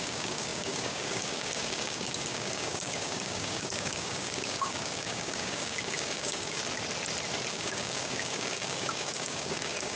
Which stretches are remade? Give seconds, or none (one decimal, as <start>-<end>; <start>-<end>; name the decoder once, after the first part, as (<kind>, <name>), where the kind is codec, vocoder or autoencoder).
0.0-6.6 (codec, DAC); 7.5-10.0